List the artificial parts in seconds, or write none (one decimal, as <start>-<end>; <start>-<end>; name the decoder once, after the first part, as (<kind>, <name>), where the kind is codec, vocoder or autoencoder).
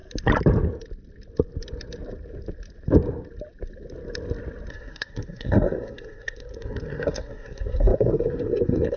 4.7-9.0 (codec, SNAC)